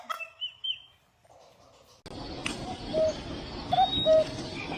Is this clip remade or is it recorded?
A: recorded